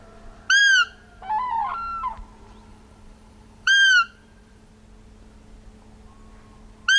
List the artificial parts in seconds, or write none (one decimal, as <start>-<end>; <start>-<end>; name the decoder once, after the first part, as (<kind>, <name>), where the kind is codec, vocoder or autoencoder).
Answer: 0.6-1.2 (vocoder, BigVGAN v2); 2.7-4.7